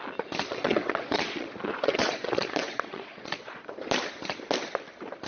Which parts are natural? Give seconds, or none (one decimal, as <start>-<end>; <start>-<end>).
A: 0.0-0.5; 3.7-5.3